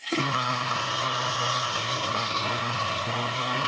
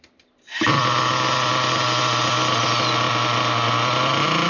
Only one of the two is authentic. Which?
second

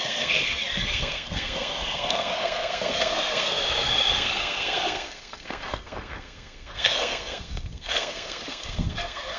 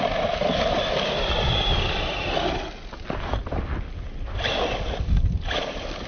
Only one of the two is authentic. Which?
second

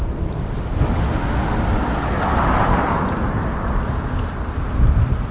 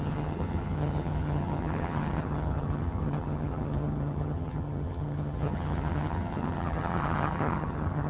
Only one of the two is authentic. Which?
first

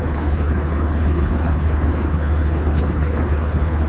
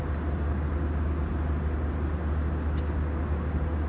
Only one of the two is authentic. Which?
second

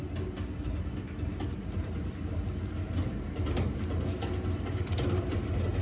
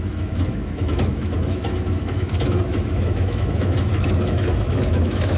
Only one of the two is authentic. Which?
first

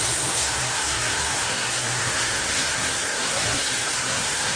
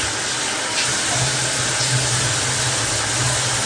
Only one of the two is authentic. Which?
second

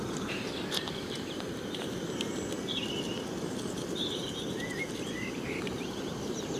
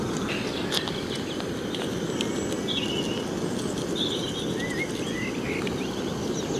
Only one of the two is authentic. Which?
second